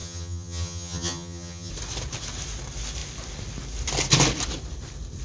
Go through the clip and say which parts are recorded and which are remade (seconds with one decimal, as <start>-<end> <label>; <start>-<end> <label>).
0.0-1.7 remade; 1.7-5.2 recorded